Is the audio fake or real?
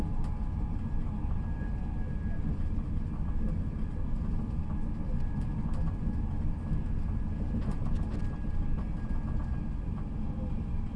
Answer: real